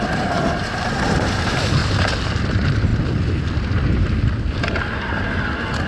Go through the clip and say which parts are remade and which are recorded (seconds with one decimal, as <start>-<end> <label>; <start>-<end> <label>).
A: 0.0-1.8 remade; 1.8-2.5 recorded; 2.5-2.9 remade; 2.9-5.9 recorded